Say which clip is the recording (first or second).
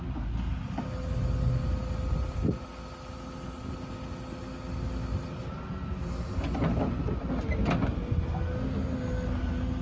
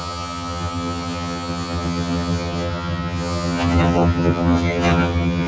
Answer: first